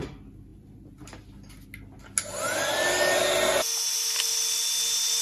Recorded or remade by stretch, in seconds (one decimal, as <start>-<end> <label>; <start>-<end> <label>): 0.0-5.2 recorded